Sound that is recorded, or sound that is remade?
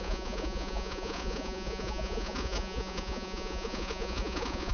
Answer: remade